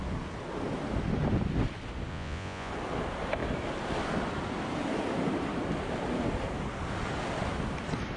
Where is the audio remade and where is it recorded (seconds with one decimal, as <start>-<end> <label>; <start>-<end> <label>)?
0.0-2.1 recorded; 2.1-2.7 remade; 2.7-8.2 recorded